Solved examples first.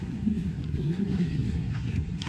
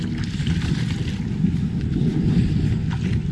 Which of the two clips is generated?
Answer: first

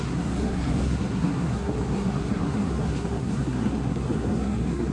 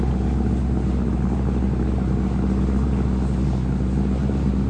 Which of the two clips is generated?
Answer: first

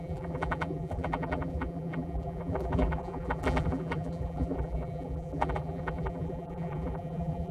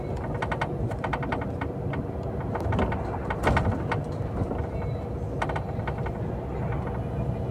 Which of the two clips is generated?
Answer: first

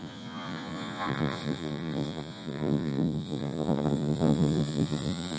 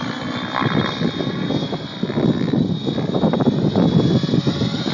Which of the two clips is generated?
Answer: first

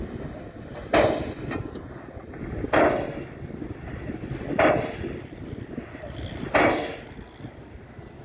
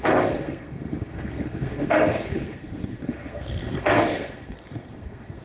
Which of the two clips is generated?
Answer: second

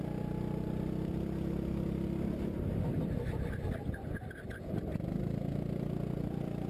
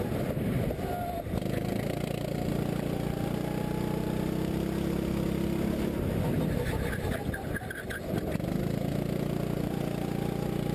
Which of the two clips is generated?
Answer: first